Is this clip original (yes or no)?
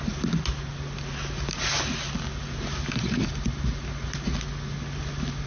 yes